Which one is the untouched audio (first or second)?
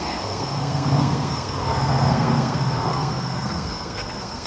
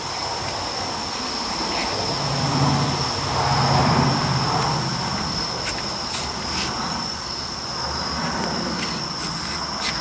second